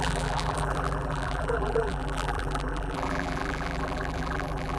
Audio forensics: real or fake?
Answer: fake